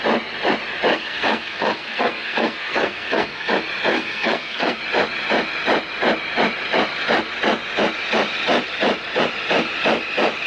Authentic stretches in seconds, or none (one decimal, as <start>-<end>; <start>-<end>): 0.0-0.9; 3.5-3.9; 4.8-10.5